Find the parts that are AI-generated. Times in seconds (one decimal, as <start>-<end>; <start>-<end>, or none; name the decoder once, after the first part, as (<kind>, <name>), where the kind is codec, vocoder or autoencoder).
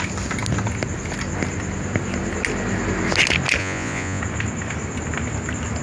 3.6-4.2 (vocoder, Vocos)